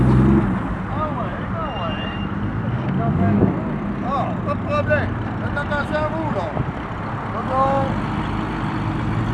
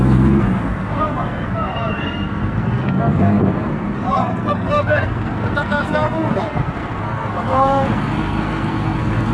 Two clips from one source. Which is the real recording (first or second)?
first